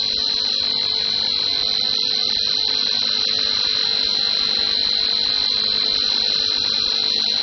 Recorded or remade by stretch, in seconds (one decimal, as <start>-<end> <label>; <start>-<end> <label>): 0.0-7.4 recorded